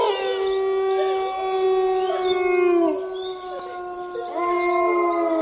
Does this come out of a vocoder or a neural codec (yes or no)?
no